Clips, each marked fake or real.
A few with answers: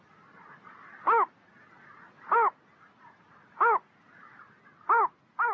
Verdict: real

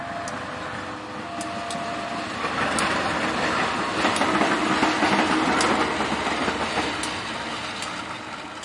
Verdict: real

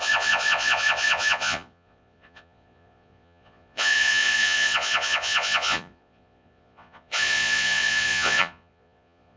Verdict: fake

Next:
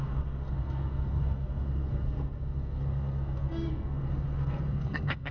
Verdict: fake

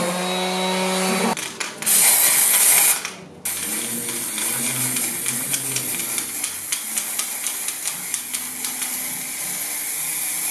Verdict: real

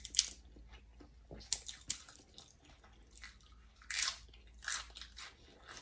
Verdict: real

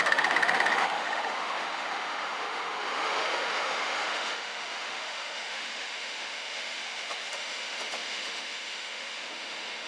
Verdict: fake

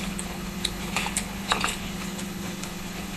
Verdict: fake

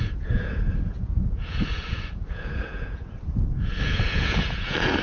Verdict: fake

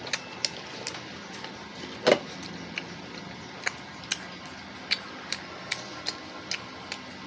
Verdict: real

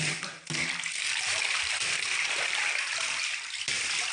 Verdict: fake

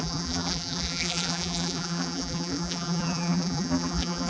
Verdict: fake